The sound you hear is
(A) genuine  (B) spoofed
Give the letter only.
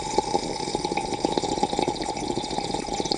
A